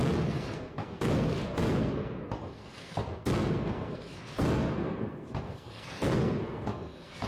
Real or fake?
fake